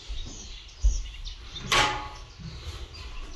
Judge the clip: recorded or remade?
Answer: recorded